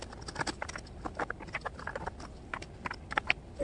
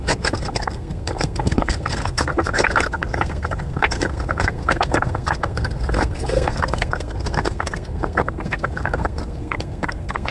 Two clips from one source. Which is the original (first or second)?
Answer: first